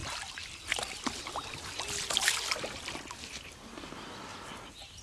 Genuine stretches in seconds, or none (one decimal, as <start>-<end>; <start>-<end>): 0.0-5.0